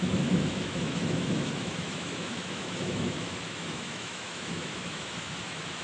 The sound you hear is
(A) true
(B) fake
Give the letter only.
B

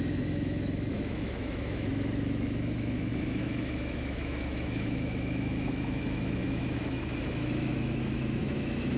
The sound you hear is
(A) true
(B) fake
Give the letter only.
B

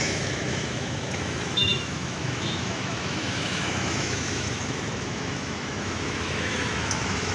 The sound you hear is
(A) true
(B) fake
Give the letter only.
B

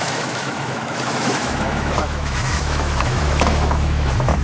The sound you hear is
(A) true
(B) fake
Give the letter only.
B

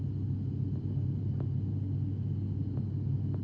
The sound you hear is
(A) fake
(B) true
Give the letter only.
B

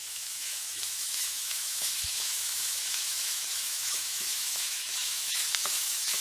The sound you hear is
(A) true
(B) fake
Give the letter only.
B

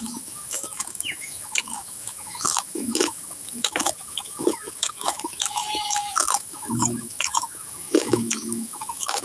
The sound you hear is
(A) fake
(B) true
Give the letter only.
A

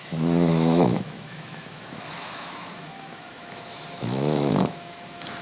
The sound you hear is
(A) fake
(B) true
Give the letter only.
A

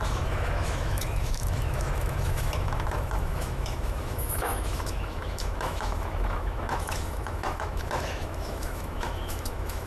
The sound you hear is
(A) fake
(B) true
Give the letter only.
A